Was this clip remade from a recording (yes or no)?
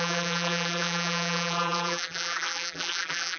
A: yes